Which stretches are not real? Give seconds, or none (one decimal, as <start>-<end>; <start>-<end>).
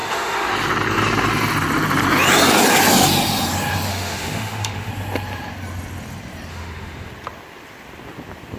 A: 0.0-0.5; 3.9-4.9; 6.5-7.1